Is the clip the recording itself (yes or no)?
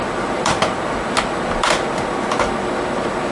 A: yes